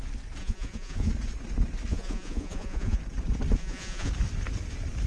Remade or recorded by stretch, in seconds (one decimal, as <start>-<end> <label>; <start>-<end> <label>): 0.0-0.4 recorded; 0.4-1.1 remade; 1.1-1.9 recorded; 1.9-3.0 remade; 3.0-3.6 recorded; 3.6-4.1 remade; 4.1-5.1 recorded